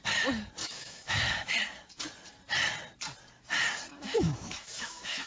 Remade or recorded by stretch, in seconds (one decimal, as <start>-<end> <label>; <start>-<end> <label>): 0.0-0.6 recorded; 0.6-1.2 remade; 1.2-3.9 recorded; 3.9-5.3 remade